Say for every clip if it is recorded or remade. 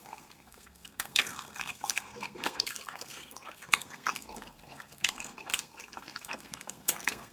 remade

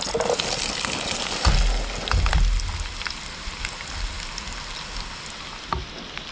recorded